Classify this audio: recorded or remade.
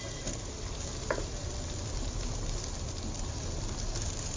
recorded